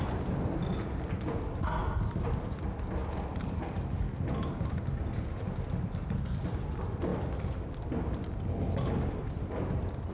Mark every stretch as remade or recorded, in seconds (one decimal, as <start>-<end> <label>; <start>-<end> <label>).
0.0-10.1 recorded